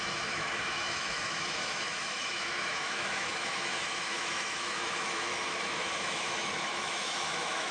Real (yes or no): no